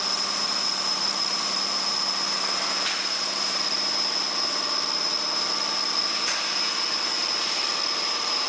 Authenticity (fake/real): real